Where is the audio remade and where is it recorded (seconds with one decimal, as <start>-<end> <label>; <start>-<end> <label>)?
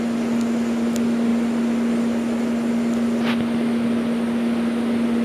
0.0-5.2 recorded